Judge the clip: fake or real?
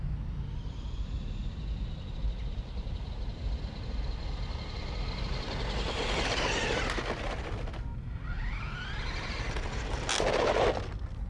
real